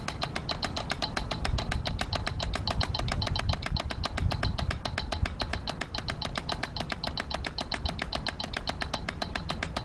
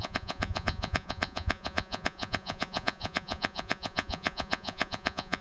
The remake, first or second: second